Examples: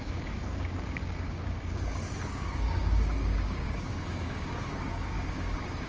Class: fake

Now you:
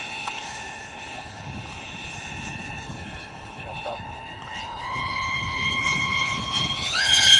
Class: fake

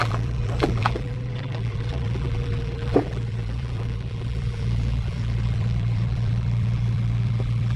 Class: fake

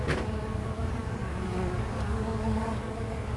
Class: fake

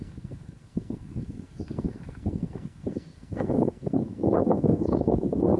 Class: fake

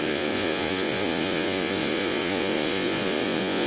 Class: fake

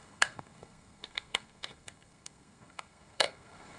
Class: fake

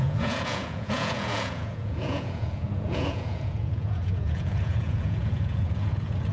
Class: fake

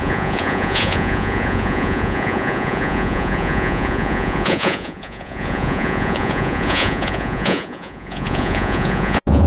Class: fake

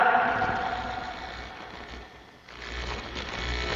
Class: real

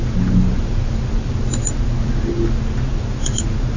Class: real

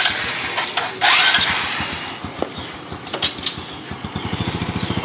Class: real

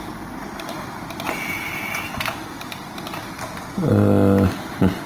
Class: real